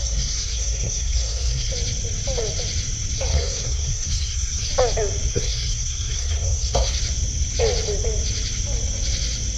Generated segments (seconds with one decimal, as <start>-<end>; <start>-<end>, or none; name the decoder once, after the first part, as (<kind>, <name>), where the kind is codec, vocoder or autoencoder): 0.0-1.7 (codec, SNAC); 3.3-4.7; 5.3-7.0